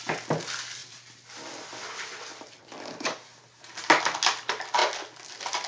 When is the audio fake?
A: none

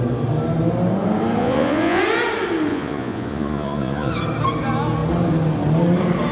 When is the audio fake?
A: 1.4-2.0 (vocoder, Vocos); 2.7-4.1

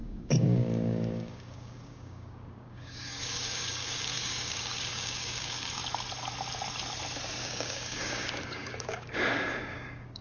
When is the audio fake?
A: 0.0-5.8 (codec, DAC); 7.4-10.2

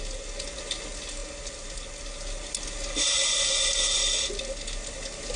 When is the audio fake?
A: none

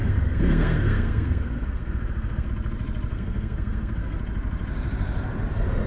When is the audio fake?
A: 0.0-2.5 (codec, SNAC); 3.1-4.2

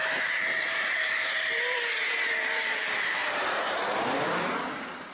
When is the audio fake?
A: 0.0-3.2 (vocoder, BigVGAN v2); 4.4-5.1

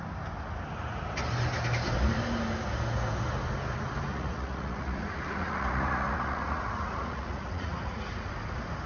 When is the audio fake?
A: 4.1-8.3 (vocoder, Vocos)